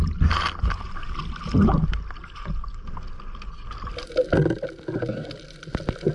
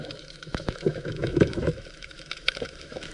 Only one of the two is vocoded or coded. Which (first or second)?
second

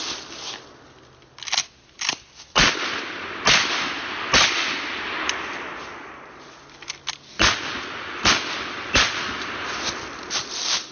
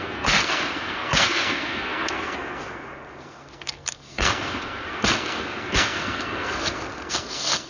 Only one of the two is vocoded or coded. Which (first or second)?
second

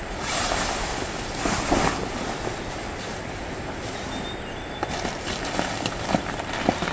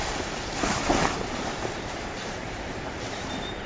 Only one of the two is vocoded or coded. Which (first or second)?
second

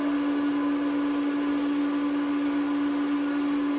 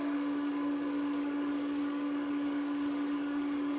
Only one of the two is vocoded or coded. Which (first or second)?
second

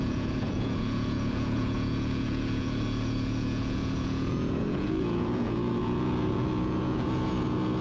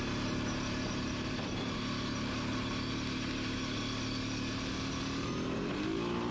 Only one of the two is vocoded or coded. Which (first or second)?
first